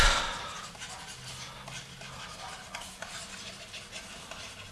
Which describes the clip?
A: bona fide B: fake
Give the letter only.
A